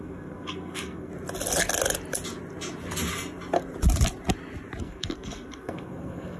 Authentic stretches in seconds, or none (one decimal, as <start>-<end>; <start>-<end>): 1.1-4.8